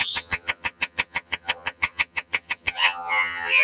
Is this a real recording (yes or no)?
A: no